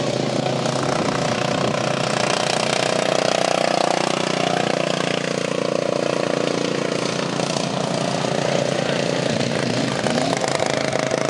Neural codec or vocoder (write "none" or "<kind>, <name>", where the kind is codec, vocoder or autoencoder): none